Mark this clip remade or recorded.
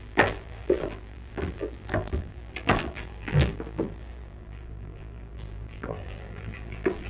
remade